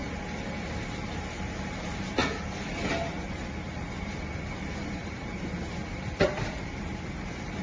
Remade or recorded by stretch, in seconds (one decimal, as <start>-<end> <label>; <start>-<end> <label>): 0.0-1.1 recorded; 1.1-2.2 remade; 2.2-3.6 recorded; 3.6-7.6 remade